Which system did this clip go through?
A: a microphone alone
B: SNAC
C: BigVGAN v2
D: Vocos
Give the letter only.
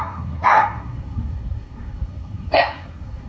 B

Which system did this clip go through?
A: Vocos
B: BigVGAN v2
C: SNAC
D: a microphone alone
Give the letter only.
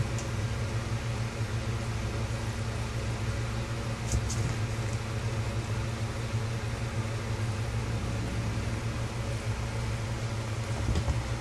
D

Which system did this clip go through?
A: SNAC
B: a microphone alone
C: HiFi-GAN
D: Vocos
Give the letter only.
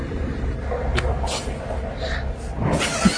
B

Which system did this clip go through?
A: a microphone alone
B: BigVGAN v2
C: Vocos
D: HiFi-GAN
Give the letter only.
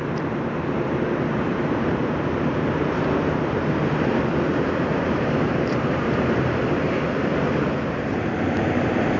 B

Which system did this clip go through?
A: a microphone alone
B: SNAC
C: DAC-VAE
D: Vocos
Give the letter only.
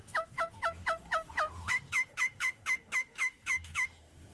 C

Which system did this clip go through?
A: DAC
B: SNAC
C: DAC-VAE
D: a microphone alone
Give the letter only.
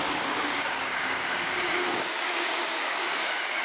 A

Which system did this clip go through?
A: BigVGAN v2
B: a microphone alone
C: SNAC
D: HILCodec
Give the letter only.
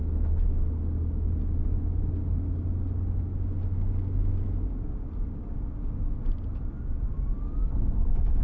B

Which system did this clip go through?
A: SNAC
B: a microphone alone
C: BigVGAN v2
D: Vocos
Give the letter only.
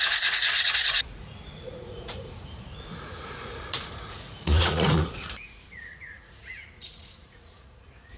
D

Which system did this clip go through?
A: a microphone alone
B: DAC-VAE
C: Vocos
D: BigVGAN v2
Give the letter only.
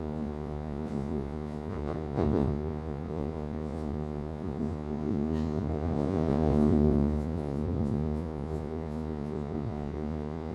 C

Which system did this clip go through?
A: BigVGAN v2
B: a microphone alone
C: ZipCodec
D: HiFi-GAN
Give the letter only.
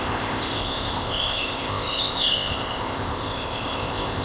C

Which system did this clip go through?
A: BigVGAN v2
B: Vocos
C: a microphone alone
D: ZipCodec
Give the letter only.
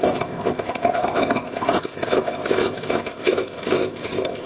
D